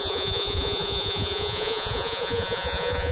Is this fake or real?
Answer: fake